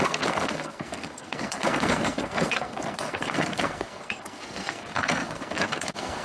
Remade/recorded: remade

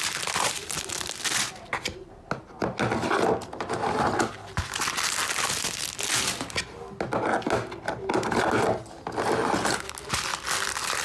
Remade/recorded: recorded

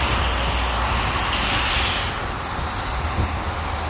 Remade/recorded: recorded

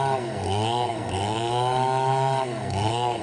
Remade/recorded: remade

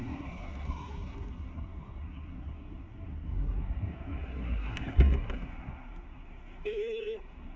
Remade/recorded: remade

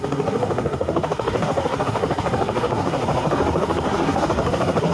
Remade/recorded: remade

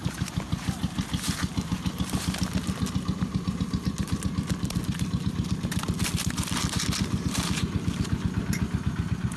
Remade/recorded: recorded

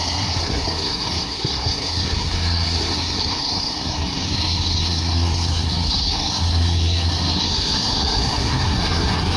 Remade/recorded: remade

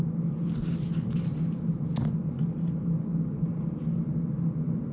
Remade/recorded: recorded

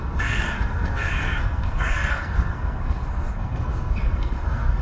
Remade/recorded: remade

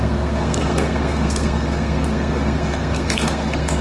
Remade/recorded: remade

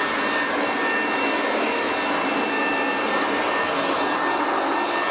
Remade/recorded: recorded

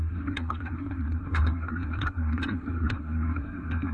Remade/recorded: remade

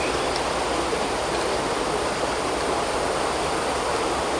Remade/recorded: recorded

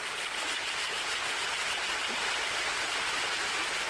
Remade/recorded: recorded